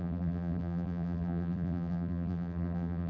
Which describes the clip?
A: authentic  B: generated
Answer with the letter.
B